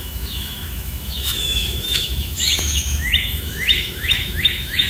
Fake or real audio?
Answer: fake